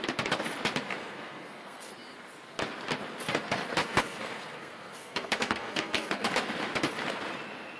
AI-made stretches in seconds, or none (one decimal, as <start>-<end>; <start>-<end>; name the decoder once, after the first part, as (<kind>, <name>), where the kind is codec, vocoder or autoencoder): 1.0-1.9 (codec, SNAC); 3.8-6.3